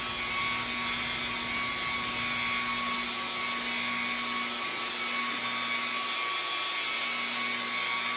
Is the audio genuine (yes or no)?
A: yes